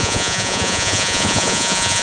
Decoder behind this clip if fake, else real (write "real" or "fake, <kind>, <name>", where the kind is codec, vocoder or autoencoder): fake, vocoder, Vocos